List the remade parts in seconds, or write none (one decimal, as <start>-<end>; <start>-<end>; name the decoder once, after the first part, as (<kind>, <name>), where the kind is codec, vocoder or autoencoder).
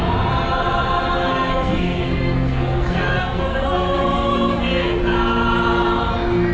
1.3-5.0 (codec, SNAC)